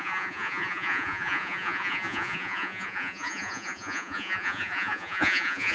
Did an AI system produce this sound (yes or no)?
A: yes